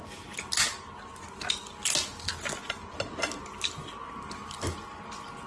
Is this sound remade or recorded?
recorded